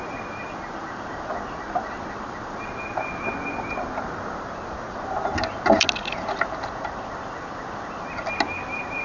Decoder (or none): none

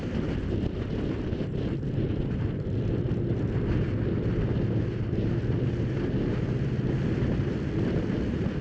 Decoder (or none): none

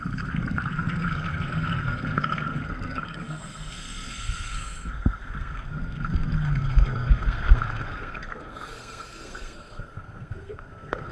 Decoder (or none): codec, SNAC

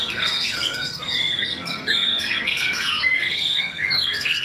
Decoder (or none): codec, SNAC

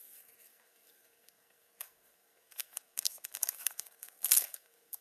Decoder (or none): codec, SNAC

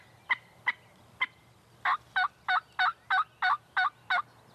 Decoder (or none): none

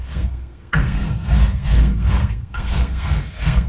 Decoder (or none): codec, SNAC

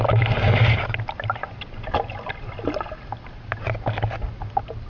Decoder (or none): none